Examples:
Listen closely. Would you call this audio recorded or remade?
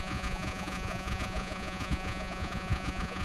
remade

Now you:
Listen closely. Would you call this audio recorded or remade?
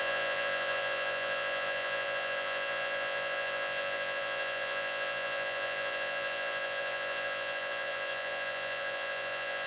remade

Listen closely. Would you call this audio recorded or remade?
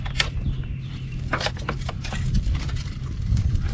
recorded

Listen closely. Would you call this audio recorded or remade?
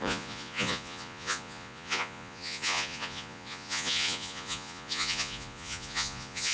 remade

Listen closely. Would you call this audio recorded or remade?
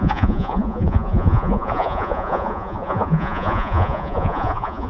remade